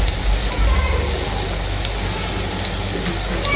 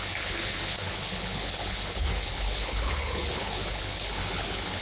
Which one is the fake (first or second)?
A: second